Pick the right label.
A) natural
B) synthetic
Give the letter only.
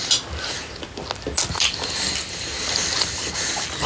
A